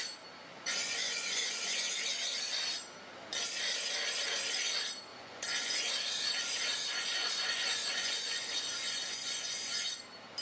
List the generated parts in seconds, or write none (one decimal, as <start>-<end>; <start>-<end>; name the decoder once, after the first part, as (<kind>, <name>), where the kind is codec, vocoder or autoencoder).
0.5-1.8 (vocoder, Vocos); 5.1-5.9; 7.1-10.0